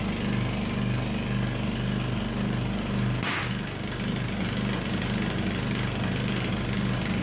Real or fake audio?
real